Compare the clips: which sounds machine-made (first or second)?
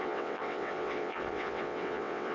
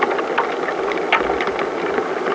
first